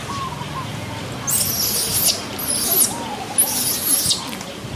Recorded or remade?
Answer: recorded